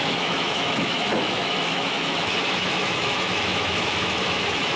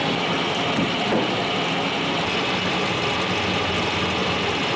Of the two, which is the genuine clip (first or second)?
second